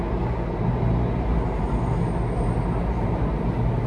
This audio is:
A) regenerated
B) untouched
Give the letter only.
B